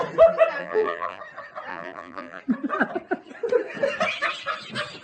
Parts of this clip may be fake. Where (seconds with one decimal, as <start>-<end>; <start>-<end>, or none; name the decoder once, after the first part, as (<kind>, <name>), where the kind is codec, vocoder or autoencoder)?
0.6-1.2 (vocoder, BigVGAN v2); 1.7-2.4